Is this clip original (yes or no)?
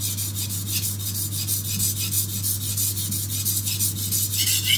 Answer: yes